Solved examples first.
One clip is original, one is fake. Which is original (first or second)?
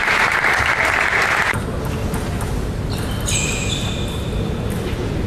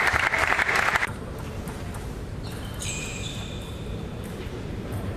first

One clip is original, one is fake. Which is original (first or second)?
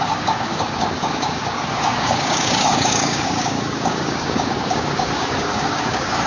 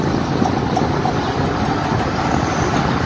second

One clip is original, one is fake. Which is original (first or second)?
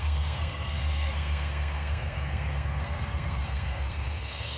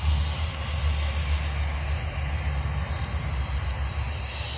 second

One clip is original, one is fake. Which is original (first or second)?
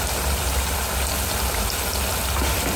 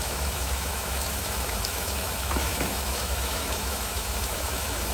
first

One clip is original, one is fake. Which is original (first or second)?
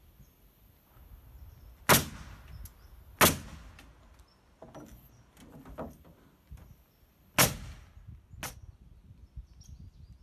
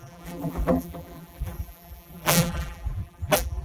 first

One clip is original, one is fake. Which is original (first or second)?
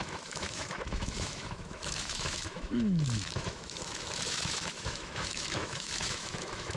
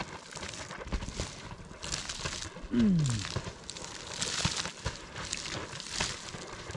second